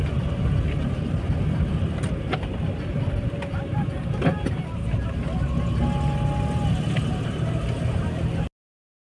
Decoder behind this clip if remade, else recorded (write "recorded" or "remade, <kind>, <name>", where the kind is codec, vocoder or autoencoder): recorded